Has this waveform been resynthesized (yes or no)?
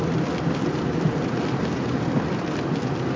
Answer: no